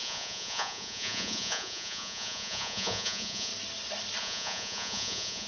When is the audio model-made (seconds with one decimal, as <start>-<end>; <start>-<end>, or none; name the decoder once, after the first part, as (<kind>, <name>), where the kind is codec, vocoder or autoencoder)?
0.0-3.5 (vocoder, Vocos); 4.2-5.5